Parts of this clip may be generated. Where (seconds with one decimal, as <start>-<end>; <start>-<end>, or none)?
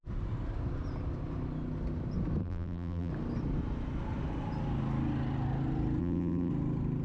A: 2.4-3.1; 6.0-6.5